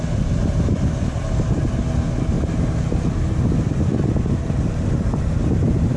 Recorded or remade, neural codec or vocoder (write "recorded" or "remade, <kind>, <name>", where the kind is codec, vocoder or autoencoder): recorded